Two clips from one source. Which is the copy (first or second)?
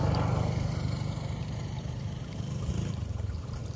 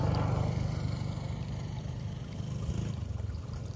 first